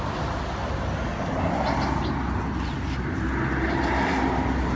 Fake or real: real